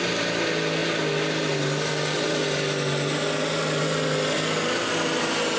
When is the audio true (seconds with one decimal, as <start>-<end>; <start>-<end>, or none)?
0.0-5.6